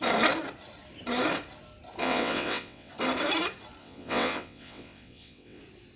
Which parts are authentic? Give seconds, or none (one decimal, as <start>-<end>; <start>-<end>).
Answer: 0.0-2.0; 2.9-3.8; 5.6-6.0